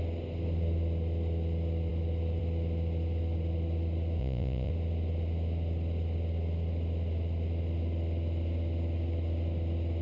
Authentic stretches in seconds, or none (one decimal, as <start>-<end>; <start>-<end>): 0.0-4.2; 4.7-10.0